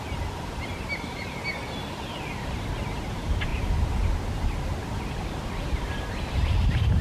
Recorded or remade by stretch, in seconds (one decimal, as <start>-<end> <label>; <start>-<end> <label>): 0.0-7.0 recorded